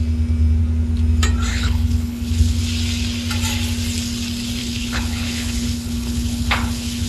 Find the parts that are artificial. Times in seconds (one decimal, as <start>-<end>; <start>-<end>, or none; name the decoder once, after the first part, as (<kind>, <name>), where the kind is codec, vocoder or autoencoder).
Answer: 1.5-2.6 (codec, HILCodec); 4.6-7.1